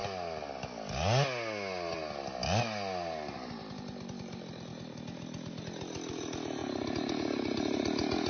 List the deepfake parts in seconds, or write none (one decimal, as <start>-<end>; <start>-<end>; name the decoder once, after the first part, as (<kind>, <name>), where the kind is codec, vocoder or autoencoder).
none